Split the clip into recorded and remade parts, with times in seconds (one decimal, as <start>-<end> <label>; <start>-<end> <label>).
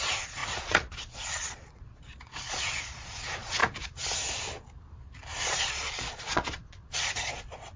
0.0-3.6 remade; 3.6-5.7 recorded; 5.7-7.8 remade